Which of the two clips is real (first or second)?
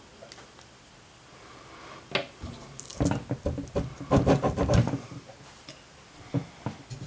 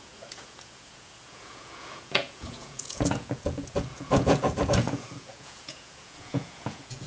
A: first